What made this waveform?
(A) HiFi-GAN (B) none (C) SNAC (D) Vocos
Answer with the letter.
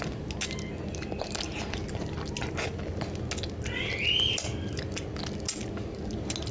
B